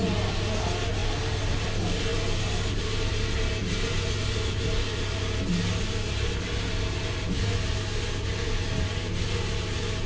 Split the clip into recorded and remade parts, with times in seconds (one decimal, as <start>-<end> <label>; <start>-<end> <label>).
0.0-10.1 recorded